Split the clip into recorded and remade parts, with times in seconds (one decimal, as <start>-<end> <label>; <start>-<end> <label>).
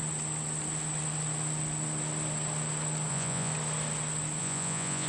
0.0-3.1 recorded; 3.1-3.5 remade; 3.5-4.4 recorded; 4.4-5.1 remade